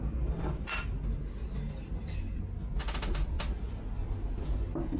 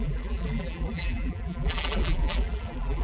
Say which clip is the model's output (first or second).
second